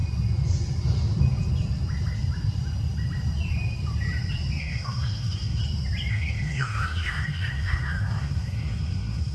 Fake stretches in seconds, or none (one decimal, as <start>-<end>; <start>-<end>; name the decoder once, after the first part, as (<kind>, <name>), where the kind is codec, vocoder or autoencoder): 4.6-5.6 (codec, SNAC); 6.1-9.3